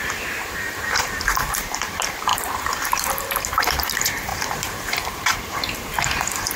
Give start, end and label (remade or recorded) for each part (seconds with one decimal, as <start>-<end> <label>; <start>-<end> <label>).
0.0-6.6 remade